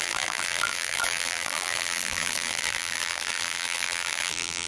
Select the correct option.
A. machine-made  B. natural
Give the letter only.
A